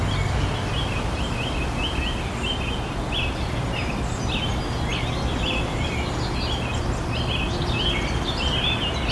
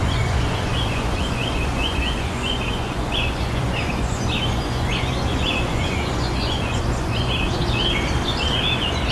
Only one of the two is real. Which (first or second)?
first